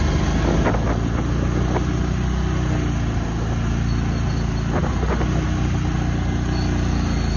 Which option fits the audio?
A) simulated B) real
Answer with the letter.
B